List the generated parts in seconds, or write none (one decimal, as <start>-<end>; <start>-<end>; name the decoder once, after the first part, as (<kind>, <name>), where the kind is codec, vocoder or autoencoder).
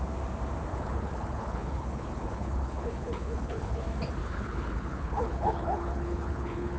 0.7-3.8 (codec, HILCodec); 4.2-6.8